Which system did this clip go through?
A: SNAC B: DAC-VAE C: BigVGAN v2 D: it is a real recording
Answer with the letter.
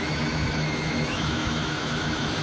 B